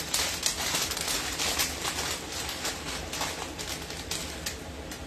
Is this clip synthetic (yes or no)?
no